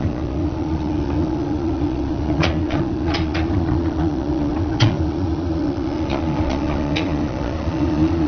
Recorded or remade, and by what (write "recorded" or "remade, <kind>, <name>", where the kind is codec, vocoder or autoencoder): remade, vocoder, Vocos